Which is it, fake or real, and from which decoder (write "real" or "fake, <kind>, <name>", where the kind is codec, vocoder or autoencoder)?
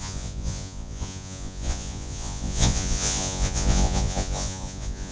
fake, vocoder, Vocos